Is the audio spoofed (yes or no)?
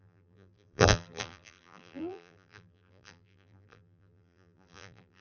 yes